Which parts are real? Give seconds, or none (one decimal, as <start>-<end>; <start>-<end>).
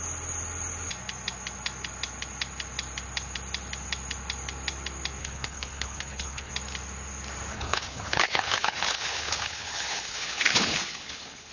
0.0-5.2; 6.5-7.5